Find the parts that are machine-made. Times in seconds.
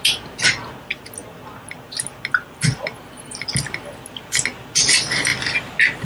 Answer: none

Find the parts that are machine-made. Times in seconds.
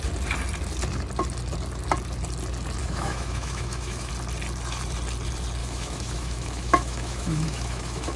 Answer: 2.8-4.1; 5.6-8.2